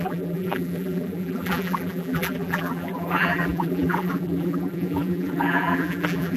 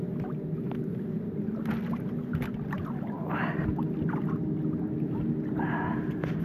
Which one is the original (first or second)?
second